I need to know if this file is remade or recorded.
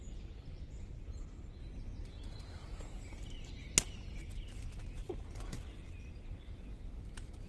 recorded